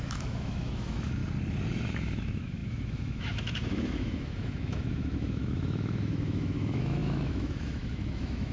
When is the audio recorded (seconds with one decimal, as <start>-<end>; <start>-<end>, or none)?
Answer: 1.2-1.9